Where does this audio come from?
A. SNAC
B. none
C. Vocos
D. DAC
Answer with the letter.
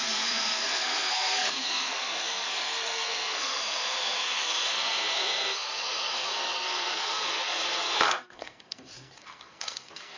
A